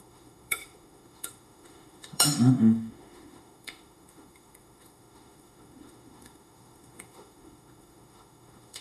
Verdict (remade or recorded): remade